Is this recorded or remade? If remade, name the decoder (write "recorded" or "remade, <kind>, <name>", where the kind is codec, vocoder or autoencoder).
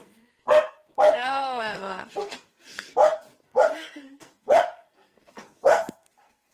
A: remade, codec, SNAC